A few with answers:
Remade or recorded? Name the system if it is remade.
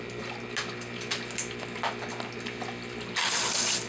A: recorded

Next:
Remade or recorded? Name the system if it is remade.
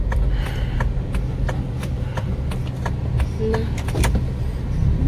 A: recorded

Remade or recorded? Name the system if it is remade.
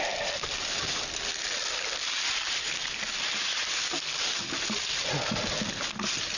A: recorded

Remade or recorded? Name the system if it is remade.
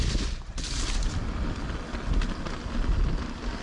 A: recorded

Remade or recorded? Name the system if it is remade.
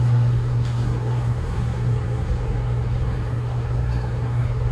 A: remade, codec, SNAC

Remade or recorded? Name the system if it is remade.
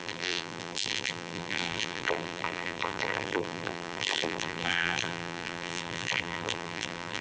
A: remade, vocoder, BigVGAN v2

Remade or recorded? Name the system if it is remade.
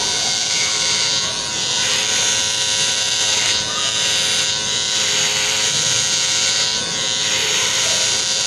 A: remade, vocoder, BigVGAN v2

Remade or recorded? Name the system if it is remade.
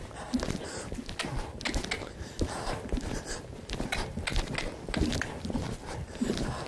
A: recorded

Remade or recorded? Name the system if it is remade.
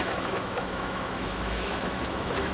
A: remade, autoencoder, DAC-VAE